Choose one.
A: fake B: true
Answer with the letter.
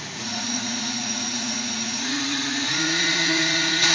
A